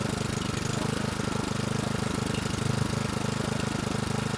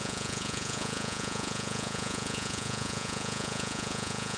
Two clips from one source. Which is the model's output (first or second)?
second